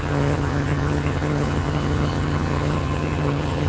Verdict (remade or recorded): remade